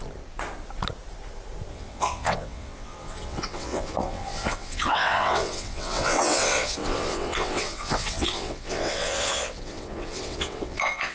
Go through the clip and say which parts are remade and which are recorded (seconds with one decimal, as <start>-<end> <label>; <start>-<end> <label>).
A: 0.0-1.7 recorded; 1.7-11.1 remade